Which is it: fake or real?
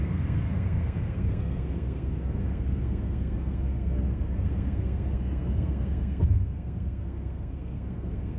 fake